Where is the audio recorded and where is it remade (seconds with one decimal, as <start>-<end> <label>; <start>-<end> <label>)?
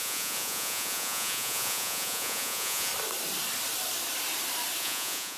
0.0-2.9 remade; 2.9-4.8 recorded; 4.8-5.4 remade